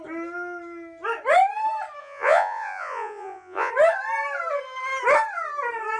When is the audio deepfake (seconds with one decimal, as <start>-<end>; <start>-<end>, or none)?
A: 2.0-3.7

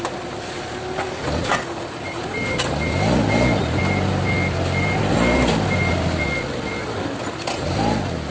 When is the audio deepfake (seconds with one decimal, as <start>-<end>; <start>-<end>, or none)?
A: none